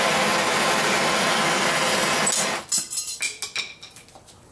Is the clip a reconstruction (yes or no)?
no